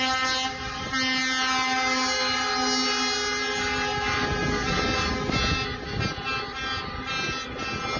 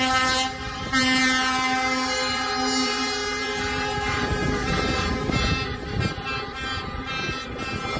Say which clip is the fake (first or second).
second